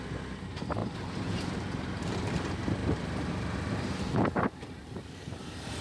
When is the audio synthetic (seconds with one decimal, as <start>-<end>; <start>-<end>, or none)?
0.8-2.1; 2.8-5.8

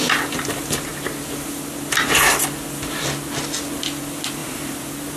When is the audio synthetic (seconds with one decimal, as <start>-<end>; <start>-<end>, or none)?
4.4-5.2

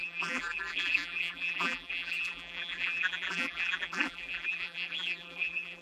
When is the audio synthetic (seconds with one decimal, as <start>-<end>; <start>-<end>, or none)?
0.0-5.8

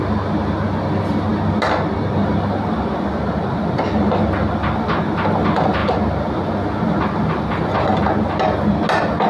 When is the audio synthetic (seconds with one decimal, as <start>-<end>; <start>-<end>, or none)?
none

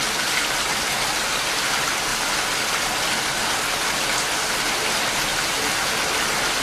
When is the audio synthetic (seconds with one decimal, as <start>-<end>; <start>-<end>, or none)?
5.3-5.9

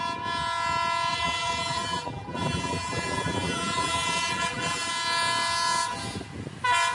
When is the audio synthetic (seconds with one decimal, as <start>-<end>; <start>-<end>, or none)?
1.1-4.9

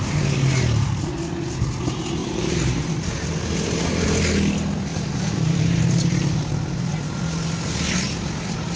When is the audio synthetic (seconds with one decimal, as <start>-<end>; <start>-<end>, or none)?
2.2-2.9; 4.9-5.8